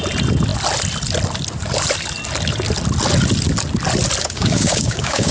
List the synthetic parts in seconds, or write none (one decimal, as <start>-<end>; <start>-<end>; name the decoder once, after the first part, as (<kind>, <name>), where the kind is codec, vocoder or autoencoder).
4.2-5.3 (codec, DAC)